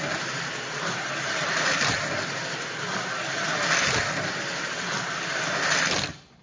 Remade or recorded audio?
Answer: recorded